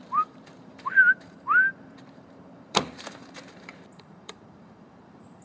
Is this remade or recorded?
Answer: remade